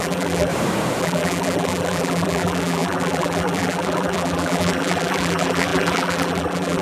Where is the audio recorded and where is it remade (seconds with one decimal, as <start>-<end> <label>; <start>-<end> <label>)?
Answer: 0.0-0.5 remade; 0.5-1.0 recorded; 1.0-6.8 remade